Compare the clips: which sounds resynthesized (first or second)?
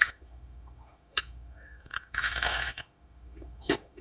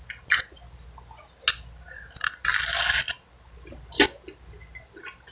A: first